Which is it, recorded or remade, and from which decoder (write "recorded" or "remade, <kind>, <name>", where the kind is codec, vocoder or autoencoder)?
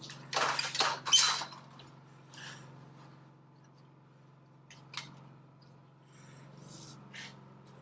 recorded